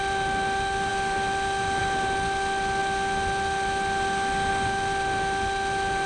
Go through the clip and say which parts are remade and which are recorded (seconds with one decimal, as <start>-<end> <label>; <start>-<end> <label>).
0.0-6.1 recorded